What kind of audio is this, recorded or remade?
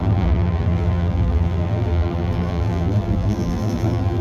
remade